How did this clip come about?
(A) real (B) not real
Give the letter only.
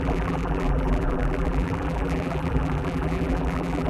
B